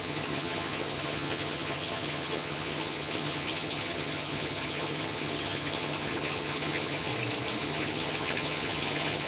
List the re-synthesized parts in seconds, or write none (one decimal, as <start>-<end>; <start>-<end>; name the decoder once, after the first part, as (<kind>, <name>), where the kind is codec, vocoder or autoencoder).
0.0-7.1 (vocoder, HiFi-GAN); 7.6-9.3